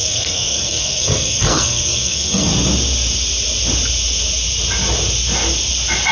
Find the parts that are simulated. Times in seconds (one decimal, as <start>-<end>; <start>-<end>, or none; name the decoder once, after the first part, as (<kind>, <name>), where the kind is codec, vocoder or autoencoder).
0.0-2.5 (codec, SNAC)